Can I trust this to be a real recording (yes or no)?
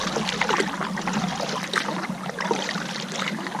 yes